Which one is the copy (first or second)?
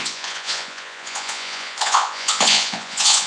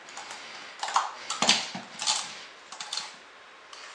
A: first